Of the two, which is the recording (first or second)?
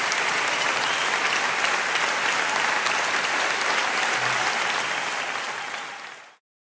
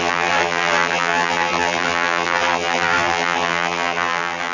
first